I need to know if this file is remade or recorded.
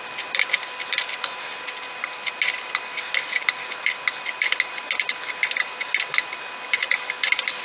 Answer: recorded